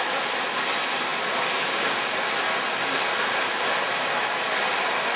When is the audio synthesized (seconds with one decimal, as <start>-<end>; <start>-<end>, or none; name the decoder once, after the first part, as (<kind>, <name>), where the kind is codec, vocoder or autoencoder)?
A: none

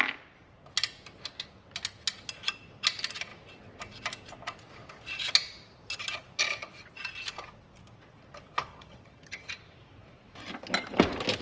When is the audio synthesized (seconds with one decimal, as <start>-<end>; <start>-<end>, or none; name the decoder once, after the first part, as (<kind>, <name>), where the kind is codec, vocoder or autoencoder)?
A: 8.7-9.5 (vocoder, HiFi-GAN)

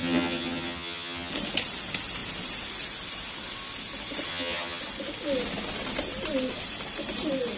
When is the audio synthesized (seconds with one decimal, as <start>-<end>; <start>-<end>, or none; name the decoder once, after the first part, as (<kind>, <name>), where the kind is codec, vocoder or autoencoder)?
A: 0.0-1.3 (vocoder, HiFi-GAN); 4.3-4.8

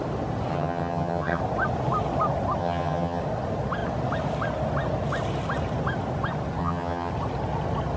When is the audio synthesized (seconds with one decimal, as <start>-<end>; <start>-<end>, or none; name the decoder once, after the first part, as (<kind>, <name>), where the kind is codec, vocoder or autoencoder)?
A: 0.5-1.4 (vocoder, HiFi-GAN); 2.6-3.2; 6.6-7.1